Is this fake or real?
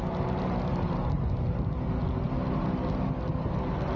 real